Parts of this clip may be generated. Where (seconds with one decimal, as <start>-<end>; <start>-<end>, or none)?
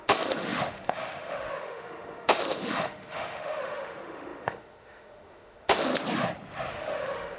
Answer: 0.0-5.9; 6.7-7.4